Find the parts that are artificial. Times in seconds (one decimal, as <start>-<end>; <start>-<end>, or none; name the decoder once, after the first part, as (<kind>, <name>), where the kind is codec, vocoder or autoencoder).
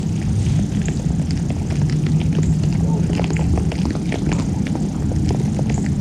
none